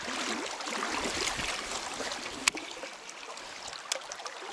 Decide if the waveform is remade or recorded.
recorded